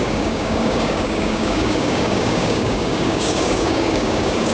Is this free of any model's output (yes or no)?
no